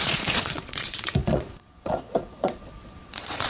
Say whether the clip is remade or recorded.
remade